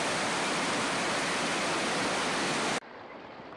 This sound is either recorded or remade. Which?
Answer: recorded